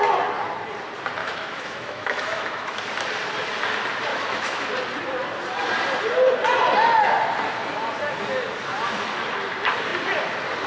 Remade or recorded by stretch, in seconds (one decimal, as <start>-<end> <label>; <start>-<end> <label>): 0.0-1.2 recorded; 1.2-2.8 remade; 2.8-4.1 recorded; 4.1-4.7 remade; 4.7-10.7 recorded